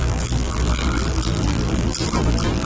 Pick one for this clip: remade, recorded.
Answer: remade